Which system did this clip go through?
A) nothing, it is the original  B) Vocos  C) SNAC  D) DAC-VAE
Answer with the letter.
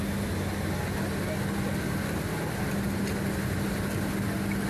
A